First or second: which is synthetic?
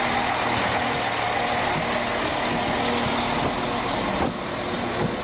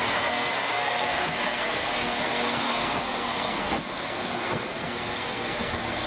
second